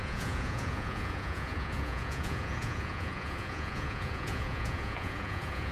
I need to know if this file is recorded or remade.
remade